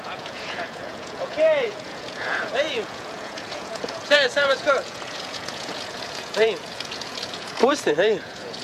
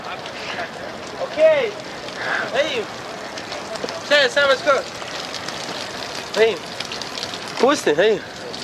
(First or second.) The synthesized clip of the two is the first